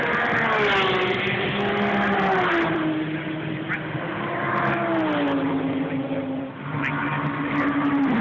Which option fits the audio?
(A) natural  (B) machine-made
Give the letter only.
A